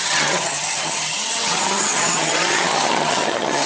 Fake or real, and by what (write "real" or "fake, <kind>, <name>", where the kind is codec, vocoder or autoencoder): fake, vocoder, HiFi-GAN